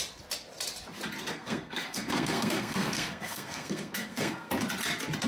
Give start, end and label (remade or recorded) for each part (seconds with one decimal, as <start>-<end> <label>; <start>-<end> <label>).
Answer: 0.0-1.3 recorded; 1.3-4.5 remade; 4.5-5.3 recorded